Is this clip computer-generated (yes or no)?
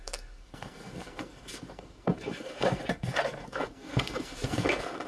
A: yes